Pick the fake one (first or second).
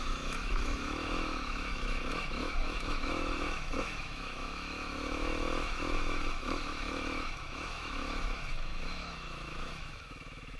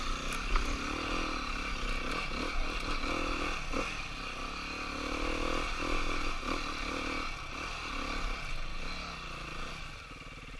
first